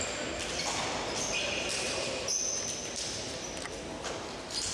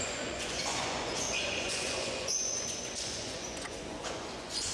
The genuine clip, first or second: first